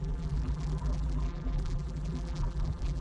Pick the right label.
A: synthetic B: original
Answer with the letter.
A